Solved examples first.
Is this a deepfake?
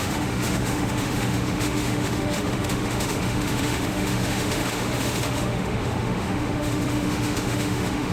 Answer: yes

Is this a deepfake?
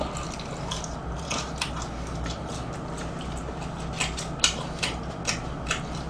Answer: no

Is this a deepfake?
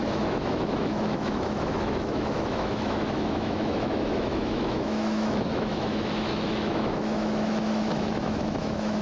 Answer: yes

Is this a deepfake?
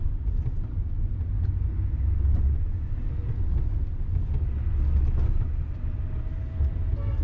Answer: no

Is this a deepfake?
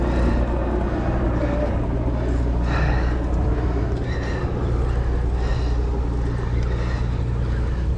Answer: no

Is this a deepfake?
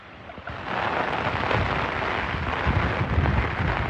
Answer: no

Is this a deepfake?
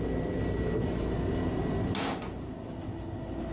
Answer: no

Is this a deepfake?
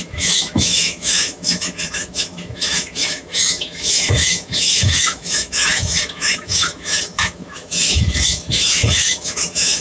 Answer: yes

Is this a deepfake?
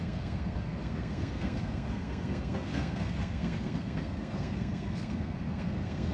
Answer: yes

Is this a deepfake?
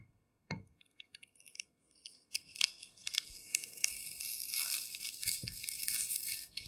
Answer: yes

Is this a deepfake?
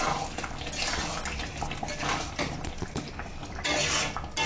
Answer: no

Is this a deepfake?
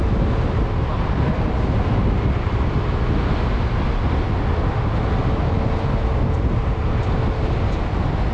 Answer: no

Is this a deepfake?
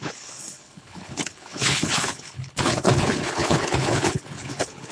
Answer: yes